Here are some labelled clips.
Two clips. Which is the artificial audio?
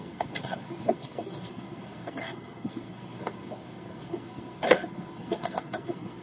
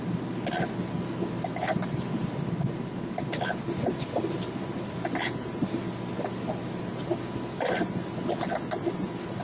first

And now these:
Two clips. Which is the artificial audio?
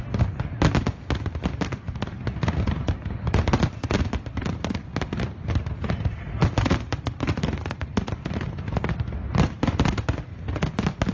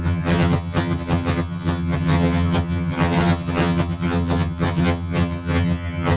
second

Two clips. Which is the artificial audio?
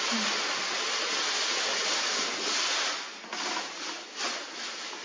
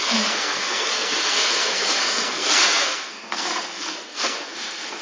second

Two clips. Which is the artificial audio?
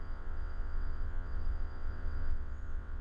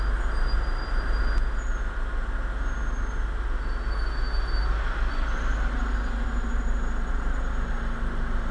first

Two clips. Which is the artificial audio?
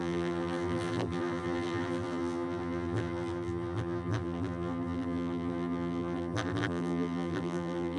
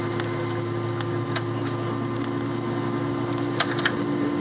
first